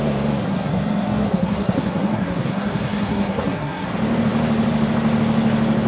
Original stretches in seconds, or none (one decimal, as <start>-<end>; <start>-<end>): 0.0-0.4; 3.9-5.9